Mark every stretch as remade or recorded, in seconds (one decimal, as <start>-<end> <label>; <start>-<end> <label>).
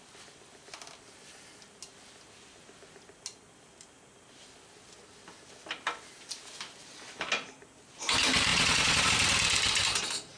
0.0-8.5 recorded; 8.5-9.1 remade; 9.1-10.4 recorded